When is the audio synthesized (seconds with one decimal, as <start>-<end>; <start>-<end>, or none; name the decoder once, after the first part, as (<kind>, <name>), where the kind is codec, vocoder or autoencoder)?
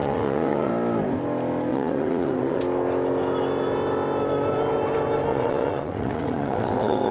0.0-0.7 (vocoder, WaveNeXt); 1.7-2.6; 5.3-7.1